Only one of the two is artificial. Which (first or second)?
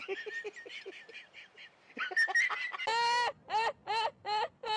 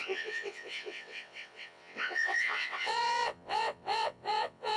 second